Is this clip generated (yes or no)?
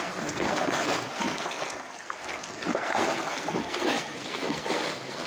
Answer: yes